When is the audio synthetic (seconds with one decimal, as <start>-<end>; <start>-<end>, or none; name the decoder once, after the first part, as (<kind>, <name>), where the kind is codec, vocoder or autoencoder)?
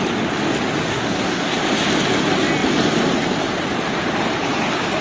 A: 0.9-1.5 (codec, SNAC)